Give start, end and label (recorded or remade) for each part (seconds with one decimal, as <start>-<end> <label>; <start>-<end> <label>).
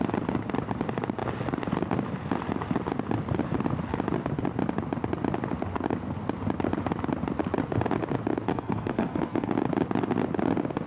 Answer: 0.0-8.5 recorded; 8.5-9.5 remade; 9.5-10.9 recorded